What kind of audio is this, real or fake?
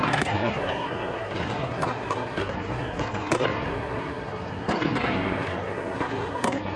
fake